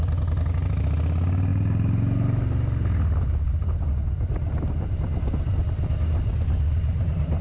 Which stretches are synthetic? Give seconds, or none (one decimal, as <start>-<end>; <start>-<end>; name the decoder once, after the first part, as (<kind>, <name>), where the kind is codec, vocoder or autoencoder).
none